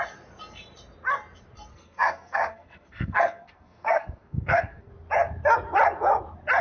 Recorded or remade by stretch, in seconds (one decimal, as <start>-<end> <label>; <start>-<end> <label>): 0.0-1.7 recorded; 1.7-4.9 remade; 4.9-6.6 recorded